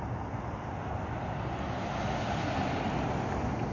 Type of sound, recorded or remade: recorded